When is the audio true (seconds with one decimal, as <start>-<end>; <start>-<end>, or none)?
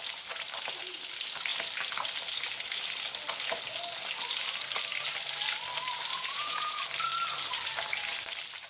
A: 0.0-6.1; 6.8-8.7